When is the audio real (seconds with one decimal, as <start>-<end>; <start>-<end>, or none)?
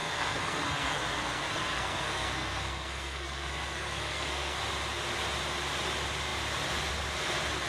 4.6-7.7